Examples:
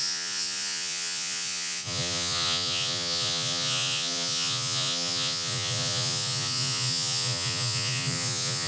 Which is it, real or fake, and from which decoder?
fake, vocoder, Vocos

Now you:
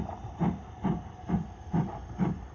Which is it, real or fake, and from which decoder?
real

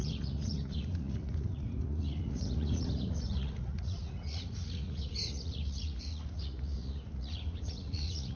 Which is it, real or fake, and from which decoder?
fake, vocoder, Vocos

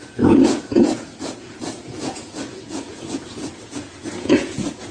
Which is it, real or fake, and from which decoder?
fake, vocoder, Vocos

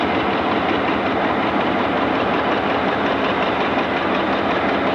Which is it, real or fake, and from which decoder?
real